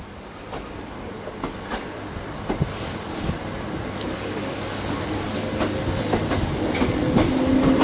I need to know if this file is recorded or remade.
recorded